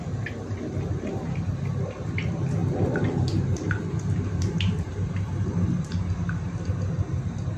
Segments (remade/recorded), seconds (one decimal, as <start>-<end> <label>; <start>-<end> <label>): 0.0-2.6 recorded; 2.6-6.7 remade; 6.7-7.6 recorded